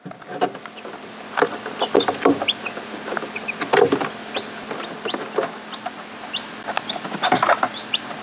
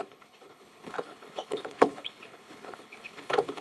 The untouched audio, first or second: first